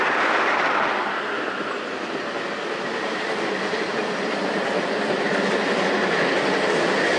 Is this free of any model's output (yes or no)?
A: yes